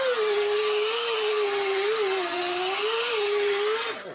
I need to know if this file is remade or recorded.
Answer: recorded